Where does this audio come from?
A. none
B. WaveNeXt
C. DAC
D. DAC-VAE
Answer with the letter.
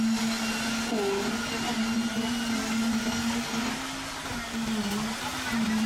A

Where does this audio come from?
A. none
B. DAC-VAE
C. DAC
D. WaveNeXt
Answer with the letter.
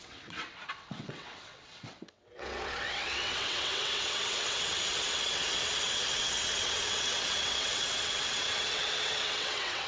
D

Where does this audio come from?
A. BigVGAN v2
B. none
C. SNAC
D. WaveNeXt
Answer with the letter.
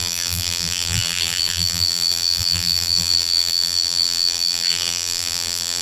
A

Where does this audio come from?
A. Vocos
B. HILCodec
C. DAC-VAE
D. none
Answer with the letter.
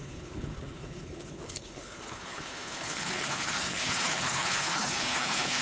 B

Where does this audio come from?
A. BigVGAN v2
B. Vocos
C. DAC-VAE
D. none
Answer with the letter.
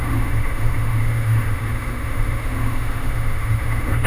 C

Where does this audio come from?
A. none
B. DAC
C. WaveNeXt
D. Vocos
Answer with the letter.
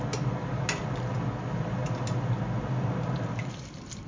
A